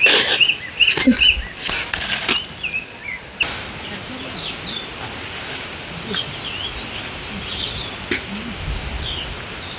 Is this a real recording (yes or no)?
yes